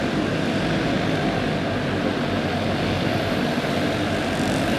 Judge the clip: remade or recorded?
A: recorded